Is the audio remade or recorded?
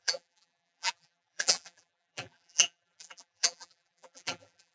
remade